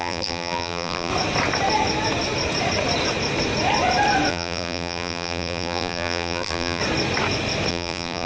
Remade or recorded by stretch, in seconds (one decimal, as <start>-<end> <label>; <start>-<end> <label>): 0.0-1.1 remade; 1.1-4.3 recorded; 4.3-6.8 remade; 6.8-7.7 recorded; 7.7-8.3 remade